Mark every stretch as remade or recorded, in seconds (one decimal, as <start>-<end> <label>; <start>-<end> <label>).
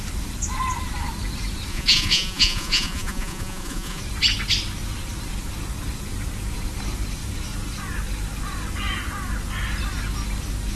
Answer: 0.0-1.7 recorded; 1.7-4.0 remade; 4.0-10.8 recorded